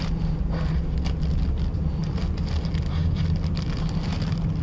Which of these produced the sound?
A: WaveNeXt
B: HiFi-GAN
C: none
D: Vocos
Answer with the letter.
C